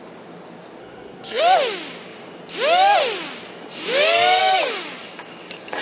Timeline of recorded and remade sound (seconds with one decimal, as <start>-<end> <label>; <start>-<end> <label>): 0.0-0.8 recorded; 0.8-1.4 remade; 1.4-5.8 recorded